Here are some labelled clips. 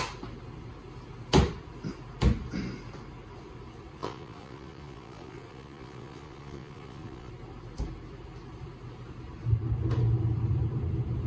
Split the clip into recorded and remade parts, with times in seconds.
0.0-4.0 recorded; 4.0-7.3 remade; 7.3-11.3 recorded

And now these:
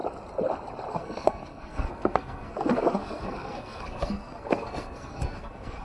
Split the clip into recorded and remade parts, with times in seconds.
0.0-0.9 recorded; 0.9-5.8 remade

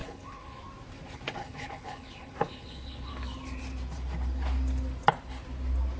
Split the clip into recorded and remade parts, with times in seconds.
0.0-0.6 remade; 0.6-1.4 recorded; 1.4-3.1 remade; 3.1-6.0 recorded

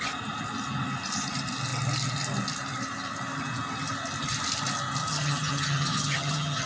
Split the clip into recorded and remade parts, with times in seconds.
0.0-5.0 recorded; 5.0-6.7 remade

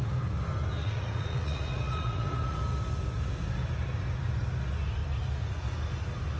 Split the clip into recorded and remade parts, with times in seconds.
0.0-0.8 recorded; 0.8-2.6 remade; 2.6-6.4 recorded

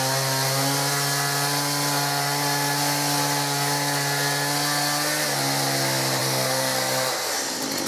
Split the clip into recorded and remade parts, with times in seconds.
0.0-6.2 recorded; 6.2-7.3 remade; 7.3-7.9 recorded

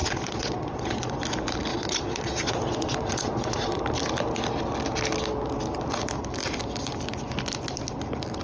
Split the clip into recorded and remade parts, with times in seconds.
0.0-1.1 remade; 1.1-1.7 recorded; 1.7-3.8 remade; 3.8-8.4 recorded